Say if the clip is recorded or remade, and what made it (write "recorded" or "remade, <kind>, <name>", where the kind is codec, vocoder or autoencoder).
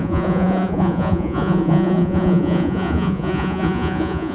remade, vocoder, Vocos